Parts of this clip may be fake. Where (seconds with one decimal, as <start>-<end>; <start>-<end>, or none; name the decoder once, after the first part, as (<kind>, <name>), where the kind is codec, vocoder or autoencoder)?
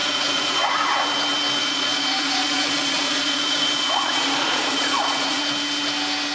0.0-0.7 (vocoder, Vocos); 1.6-5.4